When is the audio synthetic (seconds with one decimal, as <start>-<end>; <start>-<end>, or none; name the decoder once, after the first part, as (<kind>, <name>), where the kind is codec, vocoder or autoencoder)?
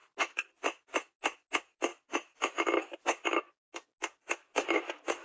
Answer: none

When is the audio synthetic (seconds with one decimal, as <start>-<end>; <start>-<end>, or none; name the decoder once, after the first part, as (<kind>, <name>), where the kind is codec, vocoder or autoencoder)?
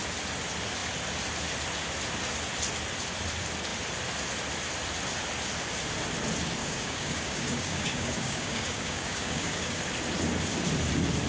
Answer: 6.6-9.8 (codec, DAC)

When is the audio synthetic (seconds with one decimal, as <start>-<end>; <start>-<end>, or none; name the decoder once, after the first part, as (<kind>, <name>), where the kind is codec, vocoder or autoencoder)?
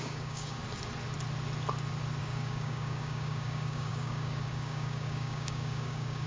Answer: 0.0-0.6 (codec, DAC); 2.2-6.3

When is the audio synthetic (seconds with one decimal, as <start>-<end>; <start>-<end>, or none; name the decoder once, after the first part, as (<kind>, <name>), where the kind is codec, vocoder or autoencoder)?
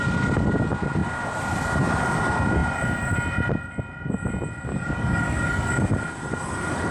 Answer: 4.7-5.7 (codec, DAC)